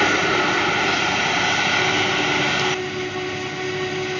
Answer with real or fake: real